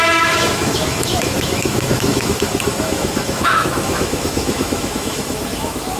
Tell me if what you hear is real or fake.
fake